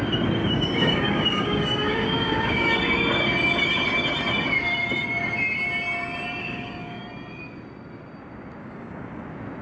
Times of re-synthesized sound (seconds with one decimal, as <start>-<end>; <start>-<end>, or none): 0.4-2.8; 6.4-7.0; 8.6-9.2